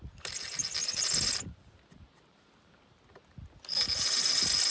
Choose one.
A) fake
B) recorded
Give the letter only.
B